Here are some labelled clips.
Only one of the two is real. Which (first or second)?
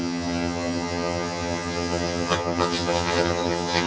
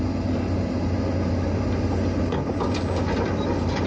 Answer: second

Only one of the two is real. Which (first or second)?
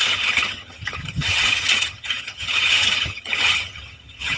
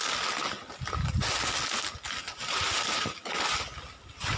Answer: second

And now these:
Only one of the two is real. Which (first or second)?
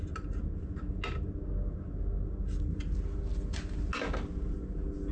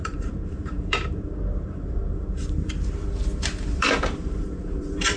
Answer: first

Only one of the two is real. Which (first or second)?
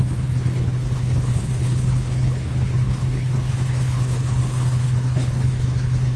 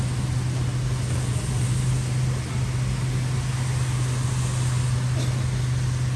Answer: second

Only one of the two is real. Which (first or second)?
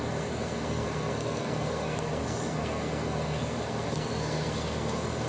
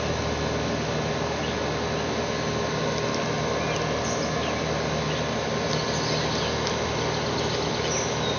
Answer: second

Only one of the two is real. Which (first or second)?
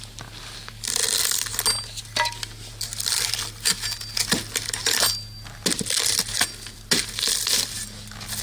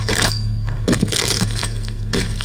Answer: first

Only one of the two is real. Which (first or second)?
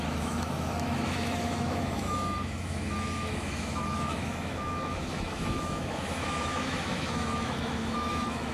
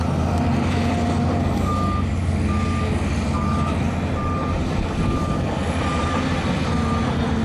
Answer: second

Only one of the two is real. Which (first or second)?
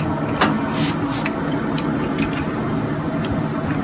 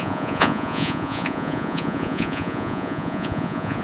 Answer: first